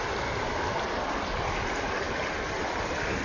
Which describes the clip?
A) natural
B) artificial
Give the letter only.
A